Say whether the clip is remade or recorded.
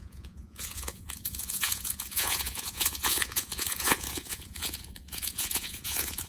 remade